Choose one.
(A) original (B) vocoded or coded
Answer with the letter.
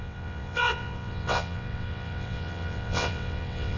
B